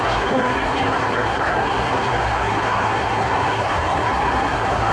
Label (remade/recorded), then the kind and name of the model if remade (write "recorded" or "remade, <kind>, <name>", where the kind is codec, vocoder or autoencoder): remade, codec, SNAC